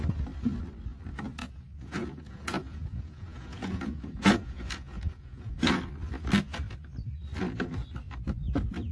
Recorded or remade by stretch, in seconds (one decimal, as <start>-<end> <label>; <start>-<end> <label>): 0.0-1.4 recorded; 1.4-5.8 remade; 5.8-8.9 recorded